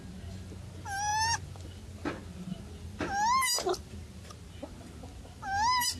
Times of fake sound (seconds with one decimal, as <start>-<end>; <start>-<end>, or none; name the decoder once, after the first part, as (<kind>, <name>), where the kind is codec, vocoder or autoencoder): none